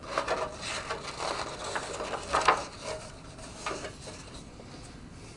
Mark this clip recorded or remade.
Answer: recorded